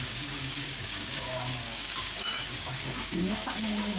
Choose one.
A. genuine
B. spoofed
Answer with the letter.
B